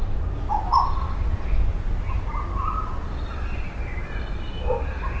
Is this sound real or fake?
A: real